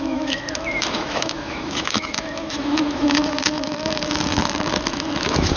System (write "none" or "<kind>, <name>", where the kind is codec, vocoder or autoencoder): autoencoder, DAC-VAE